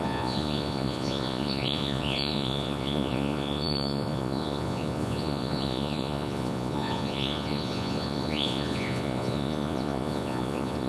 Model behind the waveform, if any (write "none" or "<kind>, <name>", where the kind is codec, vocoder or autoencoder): vocoder, Vocos